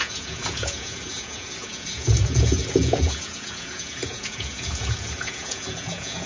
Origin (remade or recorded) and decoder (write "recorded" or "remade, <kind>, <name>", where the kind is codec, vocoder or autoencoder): remade, vocoder, Vocos